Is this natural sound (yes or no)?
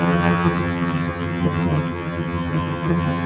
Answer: no